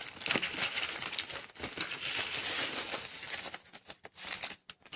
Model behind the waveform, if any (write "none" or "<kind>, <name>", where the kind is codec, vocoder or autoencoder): none